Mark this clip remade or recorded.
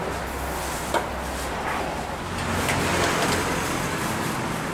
recorded